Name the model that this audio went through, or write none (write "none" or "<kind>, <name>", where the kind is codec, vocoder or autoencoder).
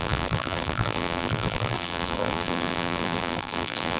vocoder, BigVGAN v2